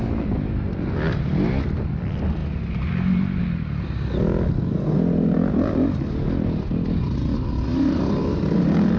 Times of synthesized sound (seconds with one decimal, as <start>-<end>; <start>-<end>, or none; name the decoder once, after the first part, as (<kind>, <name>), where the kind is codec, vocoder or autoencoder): none